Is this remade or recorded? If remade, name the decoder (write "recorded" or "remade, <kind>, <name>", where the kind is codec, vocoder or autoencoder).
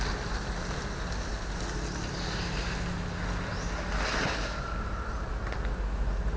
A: recorded